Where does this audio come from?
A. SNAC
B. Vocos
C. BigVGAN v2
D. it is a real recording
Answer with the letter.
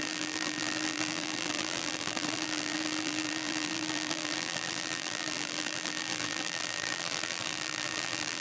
C